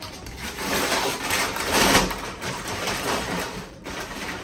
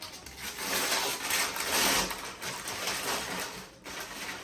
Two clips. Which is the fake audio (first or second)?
first